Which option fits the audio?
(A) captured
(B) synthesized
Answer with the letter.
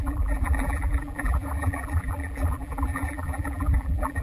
B